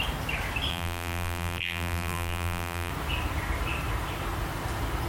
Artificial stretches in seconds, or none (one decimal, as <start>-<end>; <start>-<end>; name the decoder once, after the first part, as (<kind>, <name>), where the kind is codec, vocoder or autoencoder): 0.7-2.9 (vocoder, BigVGAN v2)